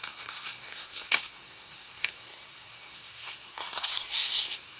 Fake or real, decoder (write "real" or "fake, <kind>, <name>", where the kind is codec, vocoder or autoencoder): fake, codec, SNAC